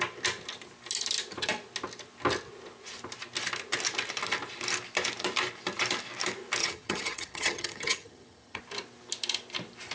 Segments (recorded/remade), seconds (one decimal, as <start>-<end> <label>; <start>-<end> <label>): 0.0-6.6 recorded; 6.6-8.6 remade; 8.6-9.9 recorded